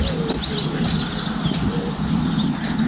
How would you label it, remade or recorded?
recorded